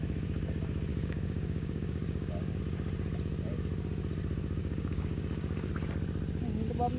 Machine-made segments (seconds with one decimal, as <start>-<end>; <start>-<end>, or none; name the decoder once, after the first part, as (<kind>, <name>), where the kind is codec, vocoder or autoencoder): 0.9-2.6 (codec, DAC); 4.6-5.7